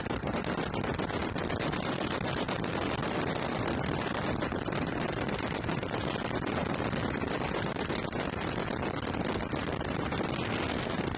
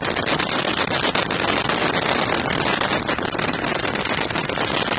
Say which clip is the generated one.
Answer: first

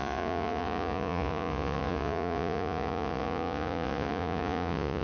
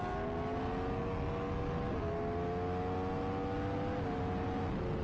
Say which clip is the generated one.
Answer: first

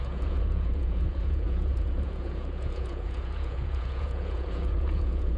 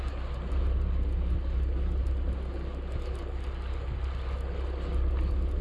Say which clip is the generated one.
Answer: first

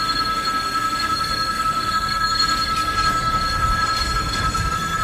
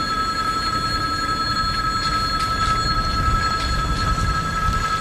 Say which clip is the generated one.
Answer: first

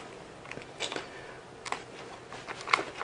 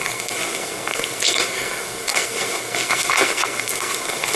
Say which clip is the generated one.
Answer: second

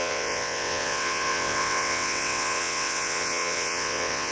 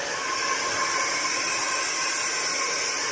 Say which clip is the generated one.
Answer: first